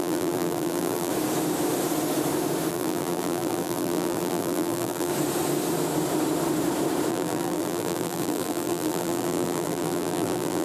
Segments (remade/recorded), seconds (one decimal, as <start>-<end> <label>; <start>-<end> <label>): 0.0-1.1 remade; 1.1-2.7 recorded; 2.7-5.1 remade; 5.1-7.1 recorded; 7.1-10.6 remade